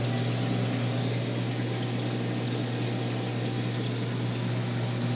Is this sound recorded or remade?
recorded